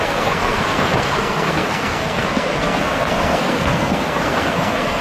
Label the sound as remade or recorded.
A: remade